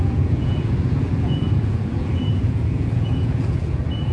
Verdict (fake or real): fake